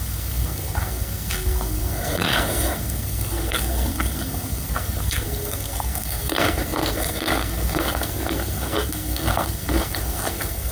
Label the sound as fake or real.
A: fake